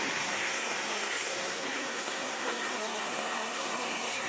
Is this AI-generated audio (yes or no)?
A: yes